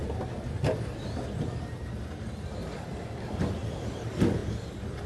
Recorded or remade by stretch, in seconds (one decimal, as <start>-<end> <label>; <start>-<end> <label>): 0.0-2.6 recorded; 2.6-4.0 remade; 4.0-4.4 recorded; 4.4-5.1 remade

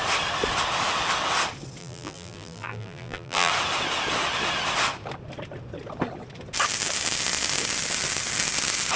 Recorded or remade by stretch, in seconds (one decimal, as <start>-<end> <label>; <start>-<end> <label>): 0.0-1.8 recorded; 1.8-3.5 remade; 3.5-9.0 recorded

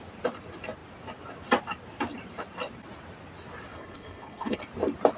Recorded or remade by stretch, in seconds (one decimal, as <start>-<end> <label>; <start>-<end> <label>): 0.0-3.7 recorded; 3.7-4.6 remade; 4.6-5.2 recorded

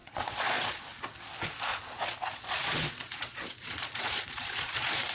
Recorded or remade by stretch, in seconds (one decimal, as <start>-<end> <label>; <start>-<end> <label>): 0.0-0.8 remade; 0.8-1.7 recorded; 1.7-5.1 remade